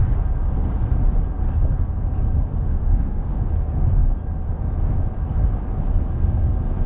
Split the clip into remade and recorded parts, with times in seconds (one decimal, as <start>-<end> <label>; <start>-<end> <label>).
0.0-2.5 recorded; 2.5-3.5 remade; 3.5-6.9 recorded